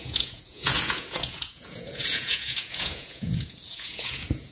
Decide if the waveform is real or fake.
fake